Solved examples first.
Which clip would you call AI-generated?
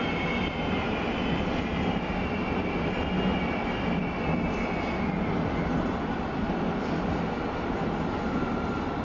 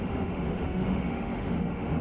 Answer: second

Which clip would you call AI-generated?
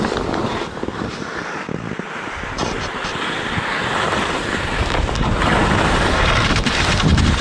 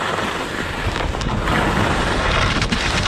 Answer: first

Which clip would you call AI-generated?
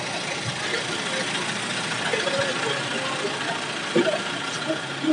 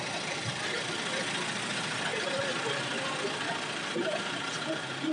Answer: second